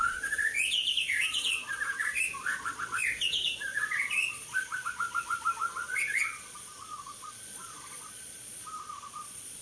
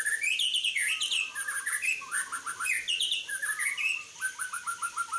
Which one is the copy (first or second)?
first